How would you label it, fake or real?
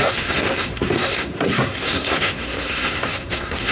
fake